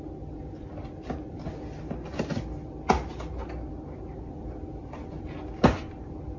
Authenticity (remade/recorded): recorded